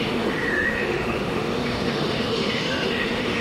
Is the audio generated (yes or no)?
yes